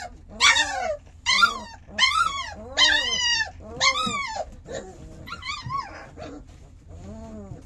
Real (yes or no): yes